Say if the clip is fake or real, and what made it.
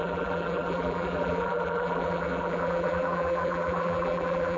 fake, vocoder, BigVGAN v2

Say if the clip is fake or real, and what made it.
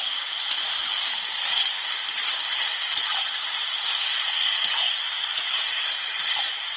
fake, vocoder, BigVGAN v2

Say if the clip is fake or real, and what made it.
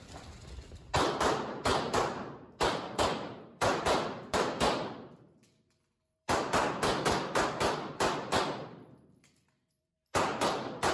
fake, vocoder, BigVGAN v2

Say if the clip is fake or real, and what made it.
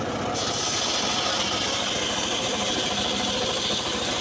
real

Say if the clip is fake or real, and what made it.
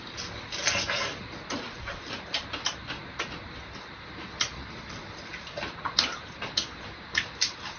fake, vocoder, BigVGAN v2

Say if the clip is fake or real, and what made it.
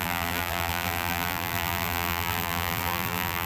fake, vocoder, BigVGAN v2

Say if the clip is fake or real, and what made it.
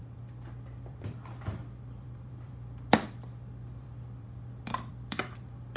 fake, vocoder, BigVGAN v2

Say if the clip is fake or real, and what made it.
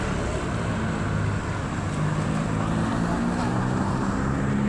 real